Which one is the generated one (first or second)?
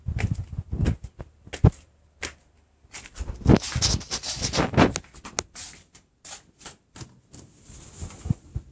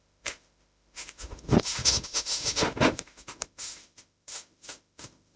second